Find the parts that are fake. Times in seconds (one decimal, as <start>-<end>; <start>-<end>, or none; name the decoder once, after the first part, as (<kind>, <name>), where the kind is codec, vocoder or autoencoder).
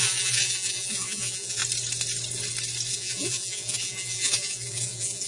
0.0-1.6 (vocoder, Vocos); 2.9-5.3